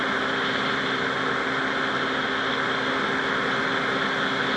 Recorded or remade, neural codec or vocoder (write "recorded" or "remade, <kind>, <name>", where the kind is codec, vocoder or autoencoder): recorded